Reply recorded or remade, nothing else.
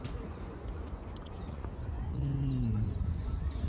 remade